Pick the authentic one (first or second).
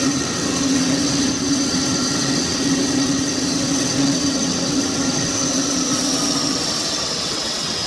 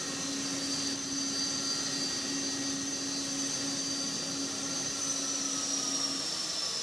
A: second